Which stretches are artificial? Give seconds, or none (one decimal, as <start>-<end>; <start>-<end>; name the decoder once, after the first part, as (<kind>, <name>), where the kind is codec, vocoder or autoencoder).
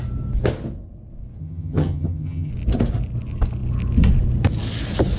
1.4-2.5 (vocoder, HiFi-GAN)